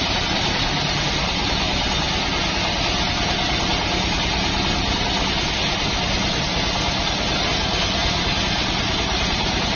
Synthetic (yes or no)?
no